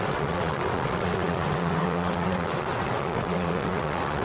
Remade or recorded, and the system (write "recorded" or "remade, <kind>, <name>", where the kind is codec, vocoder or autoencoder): remade, vocoder, WaveNeXt